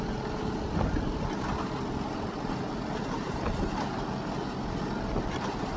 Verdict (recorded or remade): recorded